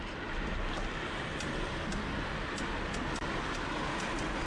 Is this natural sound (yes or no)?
yes